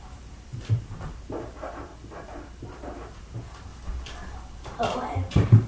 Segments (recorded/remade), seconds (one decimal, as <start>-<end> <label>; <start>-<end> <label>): 0.0-1.9 remade; 1.9-2.6 recorded; 2.6-3.7 remade; 3.7-4.8 recorded; 4.8-5.7 remade